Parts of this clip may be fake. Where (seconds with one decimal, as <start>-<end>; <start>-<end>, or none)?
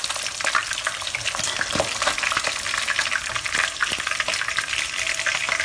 none